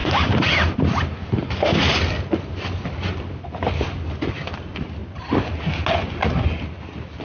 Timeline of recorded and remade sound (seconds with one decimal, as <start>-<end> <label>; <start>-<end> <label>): 0.0-7.2 recorded

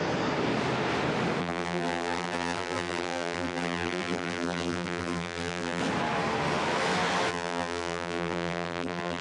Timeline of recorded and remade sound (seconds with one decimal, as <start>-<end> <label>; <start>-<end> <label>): 0.0-1.4 recorded; 1.4-5.8 remade; 5.8-7.3 recorded; 7.3-9.2 remade

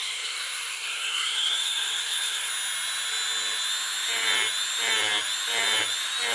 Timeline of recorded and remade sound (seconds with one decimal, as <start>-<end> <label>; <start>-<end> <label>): 0.0-2.5 remade; 2.5-6.3 recorded

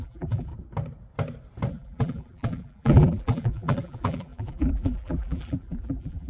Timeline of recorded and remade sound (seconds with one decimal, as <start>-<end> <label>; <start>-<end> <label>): 0.0-0.5 remade; 0.5-1.7 recorded; 1.7-6.3 remade